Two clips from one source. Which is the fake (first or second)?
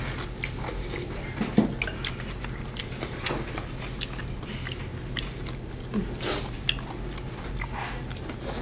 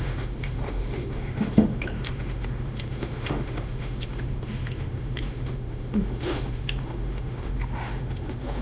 second